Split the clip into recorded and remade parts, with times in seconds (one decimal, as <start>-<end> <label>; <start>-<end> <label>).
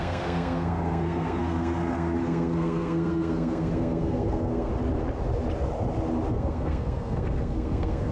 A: 0.0-4.7 remade; 4.7-6.3 recorded; 6.3-8.1 remade